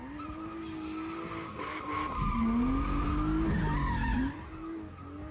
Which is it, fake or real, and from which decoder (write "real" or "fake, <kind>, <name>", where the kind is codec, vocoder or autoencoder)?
real